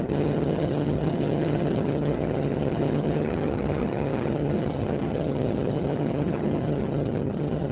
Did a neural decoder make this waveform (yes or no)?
yes